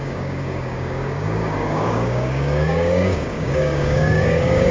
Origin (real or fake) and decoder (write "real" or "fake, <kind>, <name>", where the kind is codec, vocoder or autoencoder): fake, codec, DAC